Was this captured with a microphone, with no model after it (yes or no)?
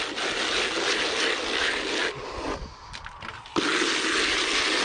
yes